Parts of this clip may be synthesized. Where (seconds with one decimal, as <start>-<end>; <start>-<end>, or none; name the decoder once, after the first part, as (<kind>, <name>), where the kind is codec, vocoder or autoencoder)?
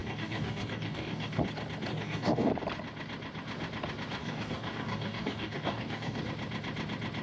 0.0-1.4 (codec, DAC); 1.9-2.5; 4.2-6.2